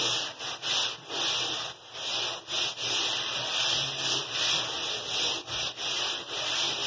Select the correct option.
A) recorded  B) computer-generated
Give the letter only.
A